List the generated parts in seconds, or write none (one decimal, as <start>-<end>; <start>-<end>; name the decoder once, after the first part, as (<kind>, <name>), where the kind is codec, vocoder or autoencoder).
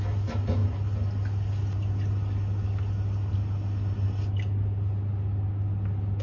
none